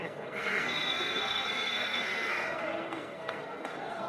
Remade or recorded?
remade